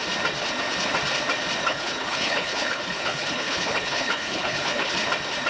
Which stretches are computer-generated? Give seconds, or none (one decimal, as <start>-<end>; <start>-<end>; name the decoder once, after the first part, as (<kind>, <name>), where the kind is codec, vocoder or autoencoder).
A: 1.6-4.9 (codec, HILCodec)